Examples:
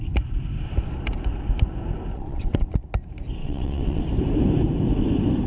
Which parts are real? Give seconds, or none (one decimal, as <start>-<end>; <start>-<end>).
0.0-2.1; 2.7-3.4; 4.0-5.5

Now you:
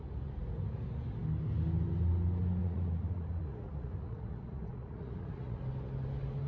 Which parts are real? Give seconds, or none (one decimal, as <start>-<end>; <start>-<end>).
0.0-2.6; 5.6-6.5

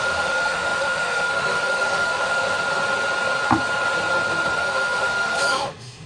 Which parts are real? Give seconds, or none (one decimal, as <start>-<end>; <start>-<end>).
2.4-4.6

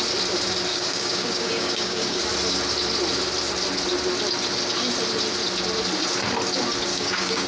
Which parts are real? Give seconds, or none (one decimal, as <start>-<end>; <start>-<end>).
0.0-0.7; 2.2-6.9

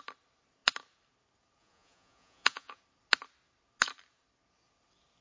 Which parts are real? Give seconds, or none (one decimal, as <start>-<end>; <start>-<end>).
0.0-1.6; 2.8-5.2

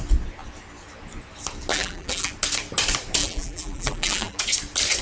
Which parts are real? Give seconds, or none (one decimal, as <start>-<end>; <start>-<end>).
0.0-1.7; 2.3-3.2; 4.4-5.0